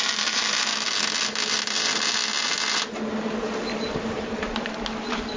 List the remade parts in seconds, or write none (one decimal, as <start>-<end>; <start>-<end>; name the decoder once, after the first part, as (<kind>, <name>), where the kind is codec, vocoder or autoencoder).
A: 0.0-0.7 (vocoder, BigVGAN v2); 3.9-4.5